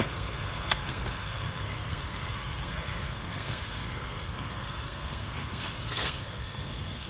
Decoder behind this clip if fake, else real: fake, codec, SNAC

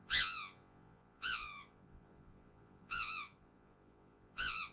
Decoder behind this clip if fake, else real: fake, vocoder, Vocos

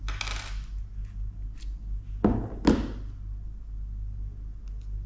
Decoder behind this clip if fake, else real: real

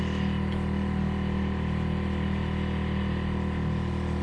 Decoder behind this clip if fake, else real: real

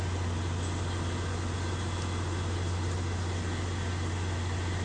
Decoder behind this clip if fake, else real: real